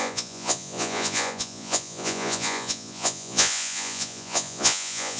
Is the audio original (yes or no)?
no